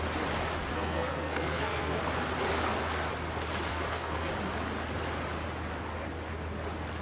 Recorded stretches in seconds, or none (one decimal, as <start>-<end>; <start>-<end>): 0.0-0.7; 2.0-3.7; 4.3-7.0